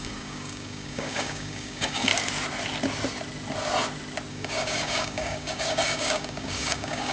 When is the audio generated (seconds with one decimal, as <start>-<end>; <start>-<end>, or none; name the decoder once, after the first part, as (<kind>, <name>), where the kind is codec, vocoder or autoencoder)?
0.0-2.1 (codec, DAC); 4.3-7.1